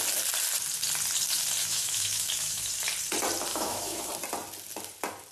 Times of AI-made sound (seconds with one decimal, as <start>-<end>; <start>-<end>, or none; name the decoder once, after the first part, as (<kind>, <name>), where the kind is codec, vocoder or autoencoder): 1.6-2.7 (autoencoder, DAC-VAE); 3.5-4.1